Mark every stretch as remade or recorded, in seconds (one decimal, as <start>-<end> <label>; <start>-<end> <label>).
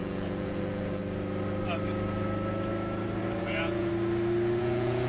0.0-1.0 remade; 1.0-3.4 recorded; 3.4-3.9 remade; 3.9-4.6 recorded; 4.6-5.1 remade